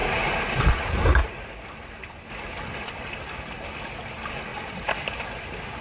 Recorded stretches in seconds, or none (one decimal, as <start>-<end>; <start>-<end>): 0.0-5.8